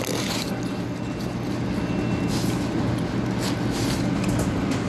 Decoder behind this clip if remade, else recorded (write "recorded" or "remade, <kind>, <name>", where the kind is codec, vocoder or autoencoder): recorded